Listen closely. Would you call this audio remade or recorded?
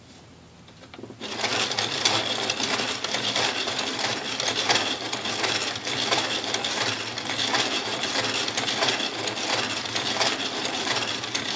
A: recorded